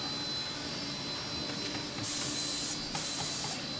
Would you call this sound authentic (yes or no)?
yes